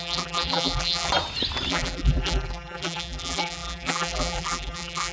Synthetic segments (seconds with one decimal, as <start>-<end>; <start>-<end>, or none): 0.0-1.1; 1.7-5.1